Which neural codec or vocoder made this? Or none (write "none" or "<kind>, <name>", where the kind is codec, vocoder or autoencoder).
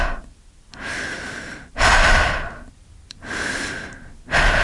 none